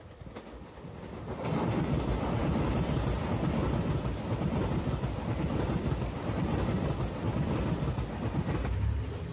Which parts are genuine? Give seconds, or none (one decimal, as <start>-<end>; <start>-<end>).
0.0-9.3